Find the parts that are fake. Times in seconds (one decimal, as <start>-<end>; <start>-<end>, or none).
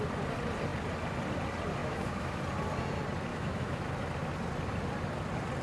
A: 1.8-2.4; 3.3-3.9